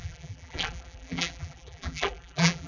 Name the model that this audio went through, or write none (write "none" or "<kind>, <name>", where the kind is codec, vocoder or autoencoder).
vocoder, BigVGAN v2